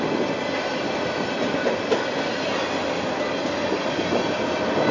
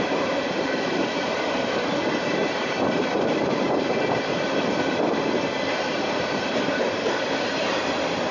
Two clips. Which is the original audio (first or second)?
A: first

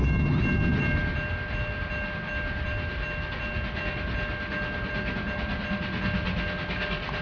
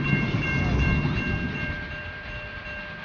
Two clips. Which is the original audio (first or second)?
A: first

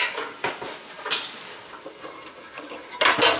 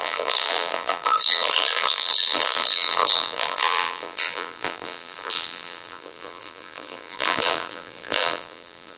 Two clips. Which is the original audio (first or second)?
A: first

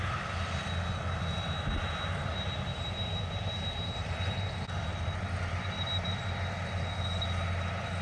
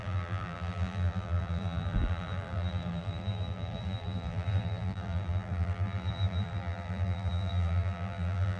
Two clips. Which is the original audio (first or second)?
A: first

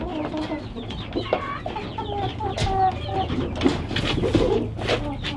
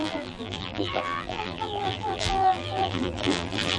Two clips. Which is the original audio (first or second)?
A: first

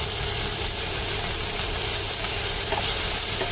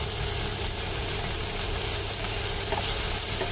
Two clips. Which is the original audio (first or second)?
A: second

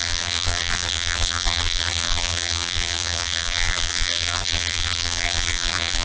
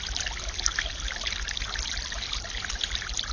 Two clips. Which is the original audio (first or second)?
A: second